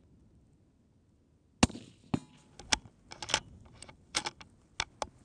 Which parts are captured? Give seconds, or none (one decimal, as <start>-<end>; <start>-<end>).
0.0-5.2